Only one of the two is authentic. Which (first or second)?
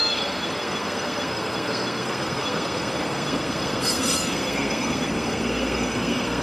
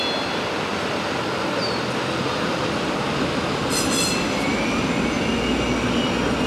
second